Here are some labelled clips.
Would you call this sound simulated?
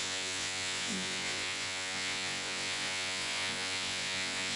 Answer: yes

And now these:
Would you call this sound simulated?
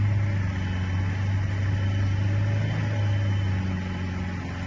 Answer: no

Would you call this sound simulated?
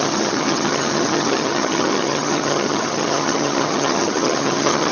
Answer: yes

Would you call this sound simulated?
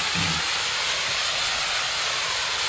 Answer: no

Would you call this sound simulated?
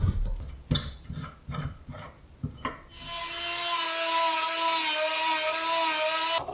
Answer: no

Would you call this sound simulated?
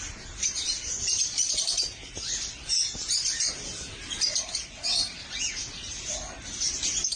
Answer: no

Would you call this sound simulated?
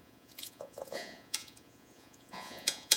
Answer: yes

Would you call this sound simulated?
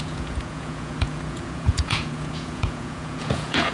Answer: yes